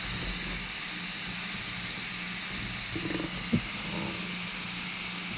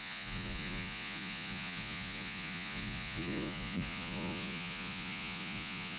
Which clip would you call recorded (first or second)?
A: first